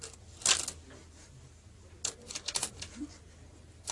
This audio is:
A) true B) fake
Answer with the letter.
A